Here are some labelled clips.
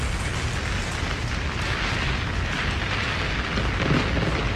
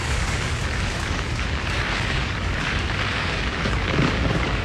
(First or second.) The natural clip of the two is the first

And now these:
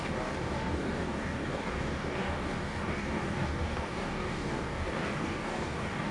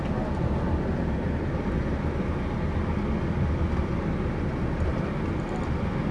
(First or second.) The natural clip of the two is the second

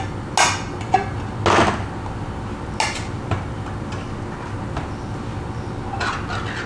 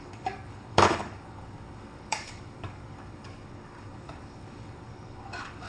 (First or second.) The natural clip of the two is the first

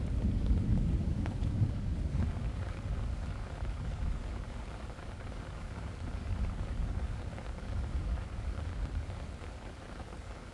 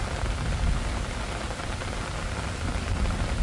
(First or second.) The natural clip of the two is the second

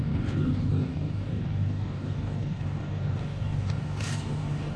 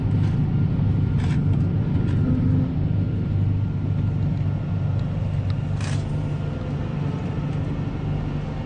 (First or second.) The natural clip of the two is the second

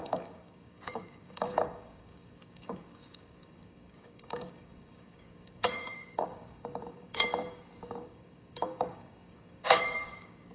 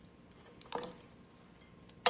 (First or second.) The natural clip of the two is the second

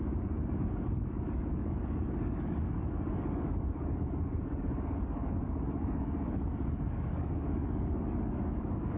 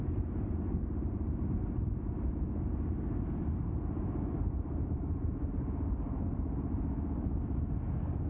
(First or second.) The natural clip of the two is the second